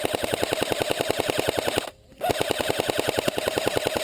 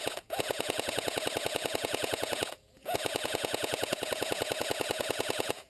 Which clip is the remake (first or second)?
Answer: second